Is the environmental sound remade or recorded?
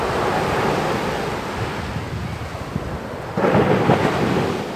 recorded